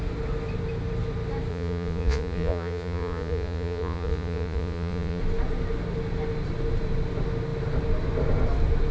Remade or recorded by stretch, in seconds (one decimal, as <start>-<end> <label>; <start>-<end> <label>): 0.0-1.5 recorded; 1.5-5.2 remade; 5.2-8.9 recorded